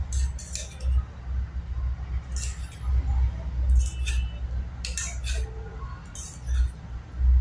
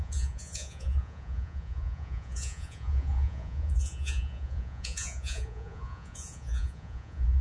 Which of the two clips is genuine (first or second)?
first